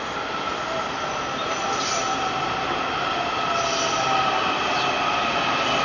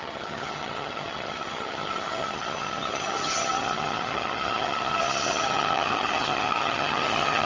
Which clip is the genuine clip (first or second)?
first